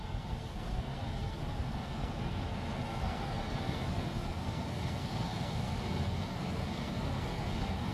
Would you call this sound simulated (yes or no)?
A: yes